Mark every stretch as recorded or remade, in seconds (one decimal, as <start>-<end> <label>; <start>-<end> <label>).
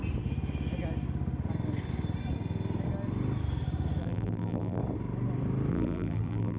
0.0-4.0 recorded; 4.0-4.8 remade; 4.8-5.7 recorded; 5.7-6.6 remade